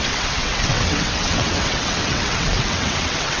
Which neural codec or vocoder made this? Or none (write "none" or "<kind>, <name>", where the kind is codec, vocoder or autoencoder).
vocoder, WaveNeXt